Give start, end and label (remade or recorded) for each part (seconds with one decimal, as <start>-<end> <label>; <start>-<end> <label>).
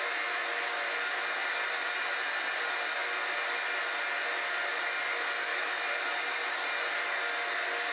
0.0-5.5 recorded; 5.5-6.1 remade; 6.1-7.9 recorded